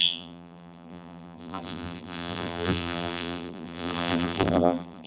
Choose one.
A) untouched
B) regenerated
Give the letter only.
B